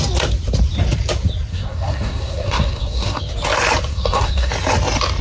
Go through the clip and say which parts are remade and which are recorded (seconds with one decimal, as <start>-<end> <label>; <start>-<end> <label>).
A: 0.0-1.5 recorded; 1.5-3.2 remade; 3.2-3.9 recorded; 3.9-4.5 remade; 4.5-5.2 recorded